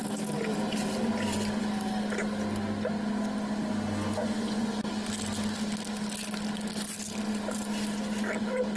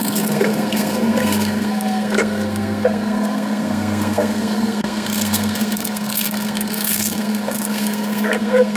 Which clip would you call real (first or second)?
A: first